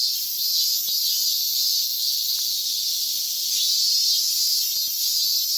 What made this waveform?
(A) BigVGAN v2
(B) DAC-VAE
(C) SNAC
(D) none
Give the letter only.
D